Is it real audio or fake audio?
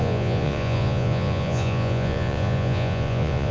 fake